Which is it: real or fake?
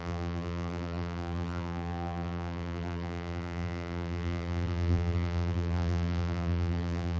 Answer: fake